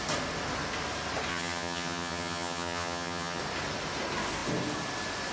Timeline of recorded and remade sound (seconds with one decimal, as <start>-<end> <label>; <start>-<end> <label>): 0.0-1.3 recorded; 1.3-3.4 remade; 3.4-5.3 recorded